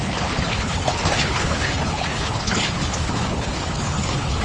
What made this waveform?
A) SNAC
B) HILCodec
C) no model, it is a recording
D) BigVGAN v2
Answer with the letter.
B